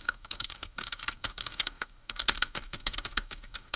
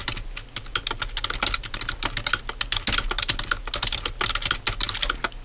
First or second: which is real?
second